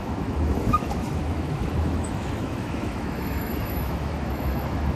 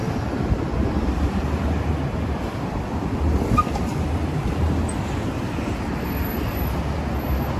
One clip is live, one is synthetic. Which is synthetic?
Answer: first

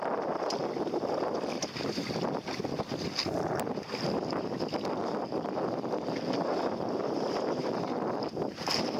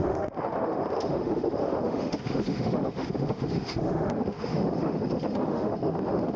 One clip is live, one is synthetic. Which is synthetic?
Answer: second